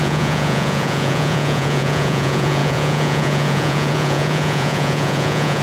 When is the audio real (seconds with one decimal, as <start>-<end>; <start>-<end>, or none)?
none